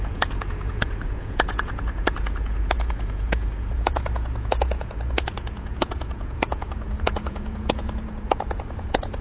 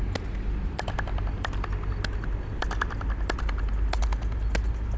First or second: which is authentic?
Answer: second